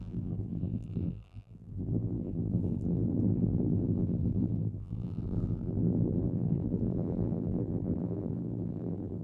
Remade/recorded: remade